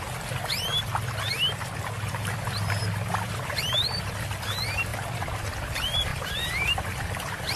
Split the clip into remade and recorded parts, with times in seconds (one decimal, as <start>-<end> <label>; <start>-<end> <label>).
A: 0.0-0.7 remade; 0.7-1.8 recorded; 1.8-4.9 remade; 4.9-5.5 recorded; 5.5-7.6 remade